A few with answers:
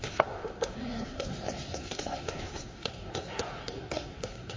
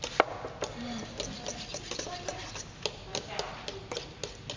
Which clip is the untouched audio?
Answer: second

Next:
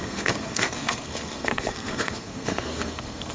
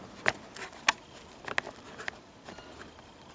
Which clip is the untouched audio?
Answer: second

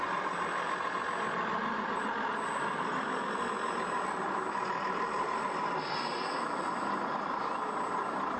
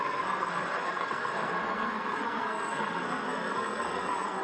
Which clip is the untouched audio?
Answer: first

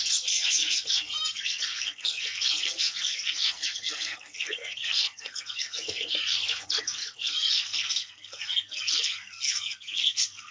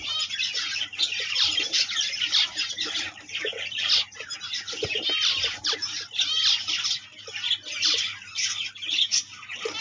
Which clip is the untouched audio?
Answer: second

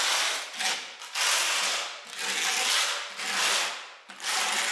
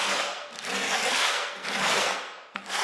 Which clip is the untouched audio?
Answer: first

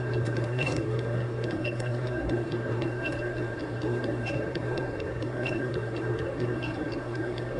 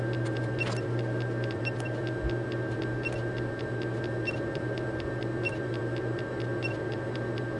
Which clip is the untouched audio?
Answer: second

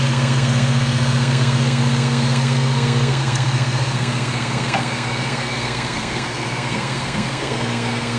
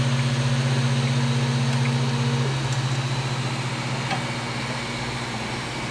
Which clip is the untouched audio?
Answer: second